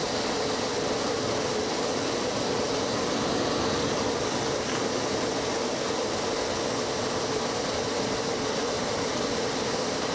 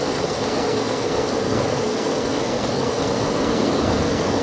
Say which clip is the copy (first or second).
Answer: second